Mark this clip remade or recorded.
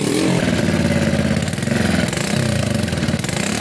recorded